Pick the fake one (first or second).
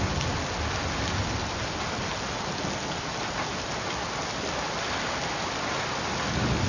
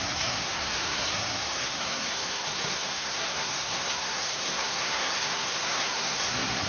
second